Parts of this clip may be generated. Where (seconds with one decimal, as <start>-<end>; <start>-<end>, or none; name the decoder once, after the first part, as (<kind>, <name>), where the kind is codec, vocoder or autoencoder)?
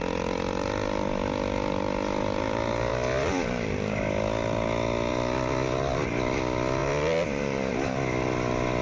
none